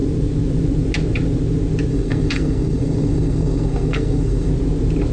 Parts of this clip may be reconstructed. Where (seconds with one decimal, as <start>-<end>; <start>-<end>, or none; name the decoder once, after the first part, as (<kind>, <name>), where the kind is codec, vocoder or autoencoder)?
1.9-4.5 (codec, SNAC)